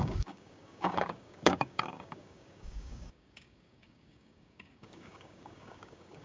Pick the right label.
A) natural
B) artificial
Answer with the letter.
B